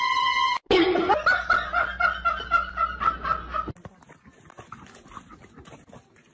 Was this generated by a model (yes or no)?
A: no